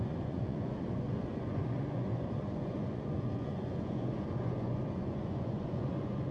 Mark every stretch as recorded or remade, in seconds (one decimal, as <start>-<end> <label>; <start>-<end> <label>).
0.0-6.3 remade